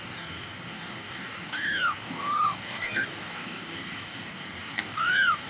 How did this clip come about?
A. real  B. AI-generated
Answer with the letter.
B